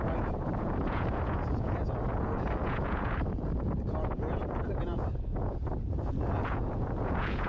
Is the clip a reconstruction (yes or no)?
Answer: yes